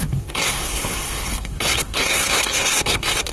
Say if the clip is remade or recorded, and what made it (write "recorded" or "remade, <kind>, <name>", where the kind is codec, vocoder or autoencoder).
remade, codec, SNAC